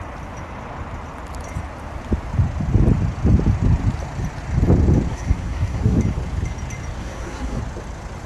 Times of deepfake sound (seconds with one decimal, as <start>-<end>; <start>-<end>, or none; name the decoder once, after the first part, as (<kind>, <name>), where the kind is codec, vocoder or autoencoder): 5.1-6.0 (codec, SNAC); 7.0-7.6